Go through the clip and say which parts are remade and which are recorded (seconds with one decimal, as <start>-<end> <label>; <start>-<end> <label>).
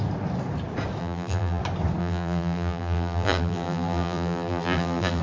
0.0-1.0 recorded; 1.0-1.6 remade; 1.6-2.0 recorded; 2.0-5.2 remade